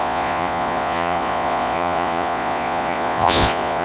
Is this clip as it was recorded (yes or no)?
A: no